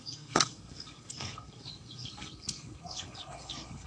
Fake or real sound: fake